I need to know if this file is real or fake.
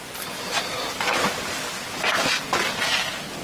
real